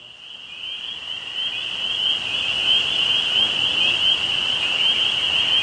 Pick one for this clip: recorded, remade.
recorded